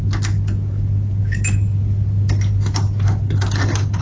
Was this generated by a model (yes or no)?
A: no